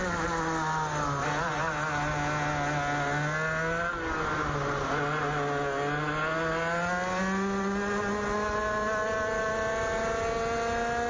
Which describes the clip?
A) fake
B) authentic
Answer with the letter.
B